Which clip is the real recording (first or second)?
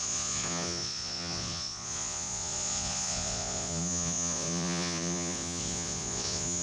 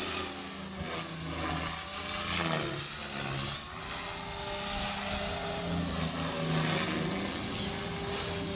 second